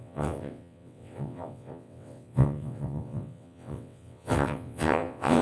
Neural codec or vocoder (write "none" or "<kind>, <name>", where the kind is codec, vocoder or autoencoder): vocoder, WaveNeXt